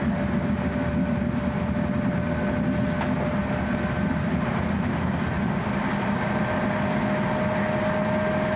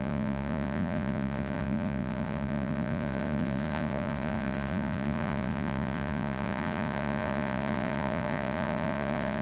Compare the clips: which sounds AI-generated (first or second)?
second